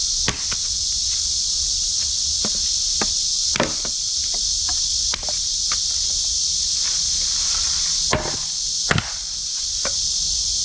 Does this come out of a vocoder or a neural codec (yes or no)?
no